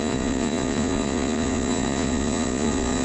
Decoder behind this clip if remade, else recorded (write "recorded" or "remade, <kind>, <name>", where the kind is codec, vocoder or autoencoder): remade, vocoder, Vocos